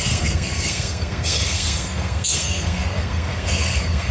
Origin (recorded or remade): remade